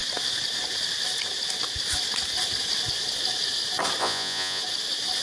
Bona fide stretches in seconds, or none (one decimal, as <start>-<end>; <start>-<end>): 0.0-4.0; 4.6-5.2